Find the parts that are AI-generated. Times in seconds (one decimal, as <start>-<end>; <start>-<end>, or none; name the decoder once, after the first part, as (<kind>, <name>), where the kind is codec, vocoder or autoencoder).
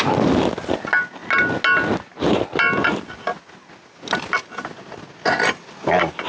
none